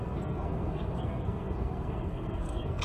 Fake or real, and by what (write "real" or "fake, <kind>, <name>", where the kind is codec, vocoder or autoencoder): fake, codec, SNAC